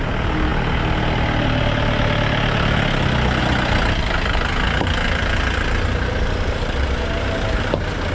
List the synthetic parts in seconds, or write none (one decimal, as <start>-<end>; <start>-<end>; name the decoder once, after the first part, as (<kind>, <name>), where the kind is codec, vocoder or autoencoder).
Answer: none

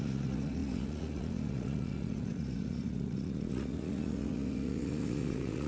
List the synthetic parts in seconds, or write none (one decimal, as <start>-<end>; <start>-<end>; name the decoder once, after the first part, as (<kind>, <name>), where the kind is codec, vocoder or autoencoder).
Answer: 0.0-5.7 (vocoder, Vocos)

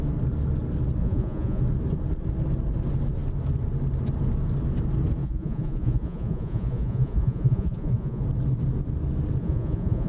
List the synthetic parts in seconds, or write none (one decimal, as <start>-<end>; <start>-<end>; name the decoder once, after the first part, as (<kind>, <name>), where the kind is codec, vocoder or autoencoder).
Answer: 1.0-1.6 (vocoder, Vocos); 5.2-8.2; 9.4-10.1